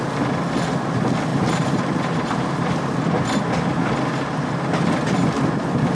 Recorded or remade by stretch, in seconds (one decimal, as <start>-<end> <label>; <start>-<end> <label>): 0.0-1.3 recorded; 1.3-2.8 remade; 2.8-5.9 recorded